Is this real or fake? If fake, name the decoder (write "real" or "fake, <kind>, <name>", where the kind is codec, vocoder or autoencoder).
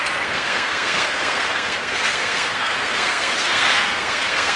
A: fake, codec, SNAC